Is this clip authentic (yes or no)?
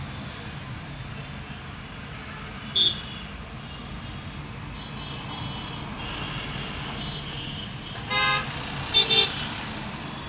yes